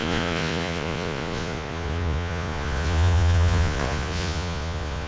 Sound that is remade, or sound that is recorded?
remade